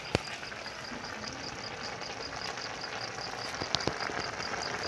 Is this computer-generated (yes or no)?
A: no